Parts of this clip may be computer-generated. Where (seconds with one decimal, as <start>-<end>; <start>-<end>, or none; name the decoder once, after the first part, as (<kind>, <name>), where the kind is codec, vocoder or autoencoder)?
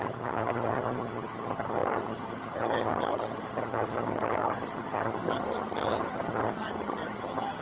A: 0.0-7.6 (vocoder, HiFi-GAN)